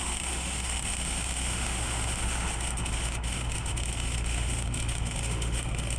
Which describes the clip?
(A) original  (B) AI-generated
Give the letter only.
B